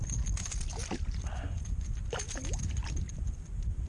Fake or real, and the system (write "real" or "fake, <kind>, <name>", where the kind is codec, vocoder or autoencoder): real